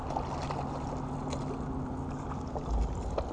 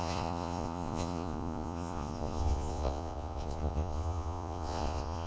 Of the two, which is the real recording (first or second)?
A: first